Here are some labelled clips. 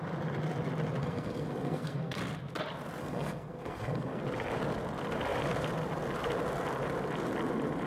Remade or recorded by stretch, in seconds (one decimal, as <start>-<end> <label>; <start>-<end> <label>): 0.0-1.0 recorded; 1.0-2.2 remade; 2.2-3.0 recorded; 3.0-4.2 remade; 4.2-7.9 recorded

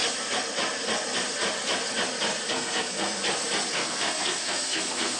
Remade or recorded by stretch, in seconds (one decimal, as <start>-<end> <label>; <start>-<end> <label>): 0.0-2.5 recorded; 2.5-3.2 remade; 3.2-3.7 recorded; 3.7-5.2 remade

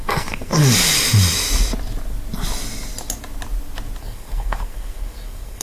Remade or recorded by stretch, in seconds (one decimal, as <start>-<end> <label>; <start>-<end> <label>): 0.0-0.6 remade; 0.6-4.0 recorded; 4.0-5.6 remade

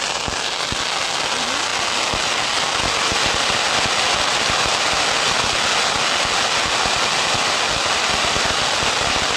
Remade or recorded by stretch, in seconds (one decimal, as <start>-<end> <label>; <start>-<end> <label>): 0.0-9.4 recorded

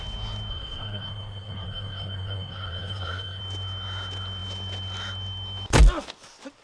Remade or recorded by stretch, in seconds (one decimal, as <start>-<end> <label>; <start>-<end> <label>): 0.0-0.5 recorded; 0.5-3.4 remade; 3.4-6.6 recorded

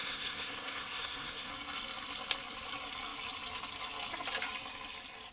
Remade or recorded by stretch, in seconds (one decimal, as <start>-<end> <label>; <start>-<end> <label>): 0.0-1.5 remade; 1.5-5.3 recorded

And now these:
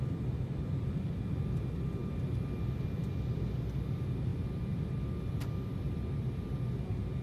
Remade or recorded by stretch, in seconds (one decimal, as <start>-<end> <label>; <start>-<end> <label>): 0.0-7.2 recorded